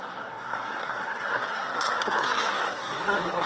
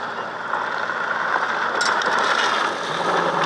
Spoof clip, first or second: first